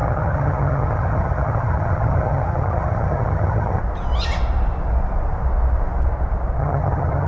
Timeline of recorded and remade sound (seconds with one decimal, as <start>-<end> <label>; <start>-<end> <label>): 0.0-3.8 remade; 3.8-6.6 recorded; 6.6-7.3 remade